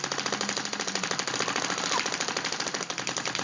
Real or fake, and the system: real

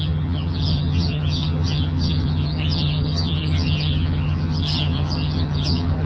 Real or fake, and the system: fake, vocoder, HiFi-GAN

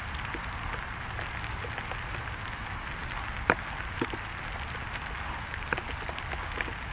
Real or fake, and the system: real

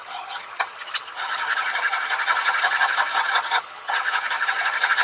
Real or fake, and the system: fake, vocoder, HiFi-GAN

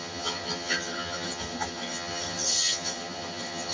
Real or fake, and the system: fake, vocoder, HiFi-GAN